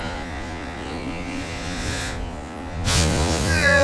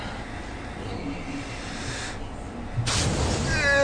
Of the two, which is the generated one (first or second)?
first